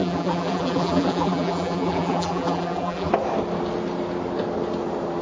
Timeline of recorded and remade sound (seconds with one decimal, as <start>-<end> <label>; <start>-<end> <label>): 0.0-3.1 remade; 3.1-5.2 recorded